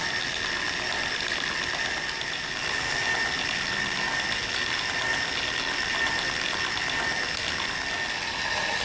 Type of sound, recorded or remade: recorded